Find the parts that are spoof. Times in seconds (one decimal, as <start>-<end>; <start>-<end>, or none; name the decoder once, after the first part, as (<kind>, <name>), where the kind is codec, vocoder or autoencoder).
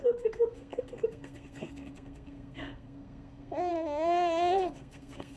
0.0-5.4 (codec, SNAC)